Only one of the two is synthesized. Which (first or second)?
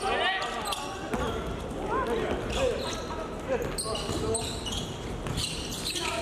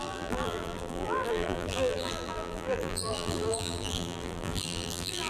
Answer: second